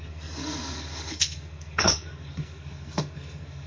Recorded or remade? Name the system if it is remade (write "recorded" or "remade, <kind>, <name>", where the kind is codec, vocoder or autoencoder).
remade, codec, SNAC